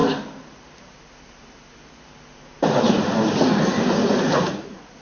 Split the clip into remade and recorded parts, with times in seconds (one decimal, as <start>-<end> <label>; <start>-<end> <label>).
0.0-4.0 recorded; 4.0-5.0 remade